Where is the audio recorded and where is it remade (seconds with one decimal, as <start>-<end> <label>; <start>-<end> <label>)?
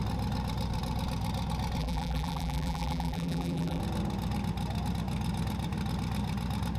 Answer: 0.0-1.8 recorded; 1.8-3.8 remade; 3.8-6.8 recorded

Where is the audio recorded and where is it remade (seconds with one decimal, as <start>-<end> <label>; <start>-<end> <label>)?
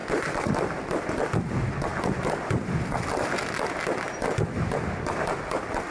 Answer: 0.0-5.9 recorded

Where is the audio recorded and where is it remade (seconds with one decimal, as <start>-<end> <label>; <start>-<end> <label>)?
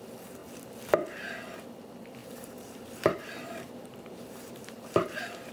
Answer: 0.0-2.2 recorded; 2.2-5.5 remade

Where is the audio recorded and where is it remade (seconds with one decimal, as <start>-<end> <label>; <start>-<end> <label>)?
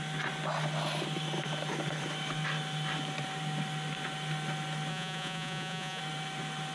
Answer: 0.0-4.9 recorded; 4.9-6.0 remade; 6.0-6.7 recorded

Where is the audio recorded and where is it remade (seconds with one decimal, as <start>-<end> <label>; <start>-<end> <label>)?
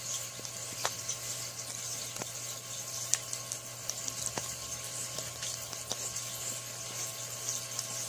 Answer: 0.0-8.1 remade